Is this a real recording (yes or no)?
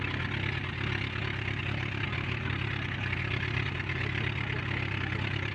yes